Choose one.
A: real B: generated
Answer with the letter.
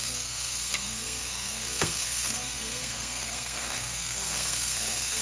B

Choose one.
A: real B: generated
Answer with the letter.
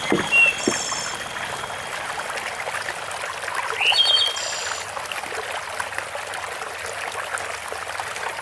A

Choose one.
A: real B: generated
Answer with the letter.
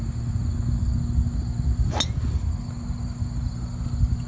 A